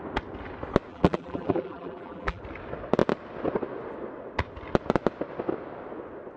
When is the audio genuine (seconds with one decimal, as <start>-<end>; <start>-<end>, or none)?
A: 0.0-0.9; 2.4-6.4